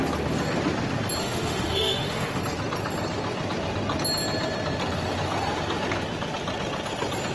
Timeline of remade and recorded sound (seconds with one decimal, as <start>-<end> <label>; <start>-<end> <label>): 0.0-1.2 recorded; 1.2-2.4 remade; 2.4-7.3 recorded